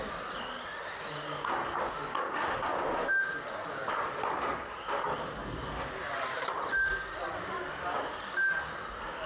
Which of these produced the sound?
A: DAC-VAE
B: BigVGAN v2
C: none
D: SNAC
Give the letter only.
C